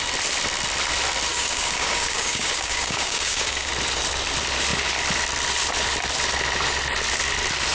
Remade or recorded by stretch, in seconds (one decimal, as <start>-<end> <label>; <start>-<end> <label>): 0.0-1.3 recorded; 1.3-3.7 remade; 3.7-7.7 recorded